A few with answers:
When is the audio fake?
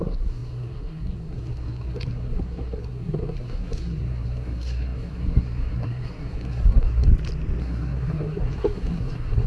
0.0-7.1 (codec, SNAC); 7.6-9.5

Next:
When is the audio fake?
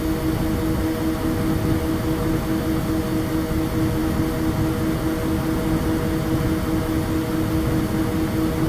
none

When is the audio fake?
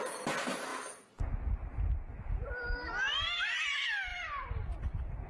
2.1-3.5 (vocoder, BigVGAN v2); 4.1-5.3